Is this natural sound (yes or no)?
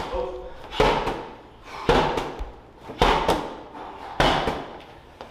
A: yes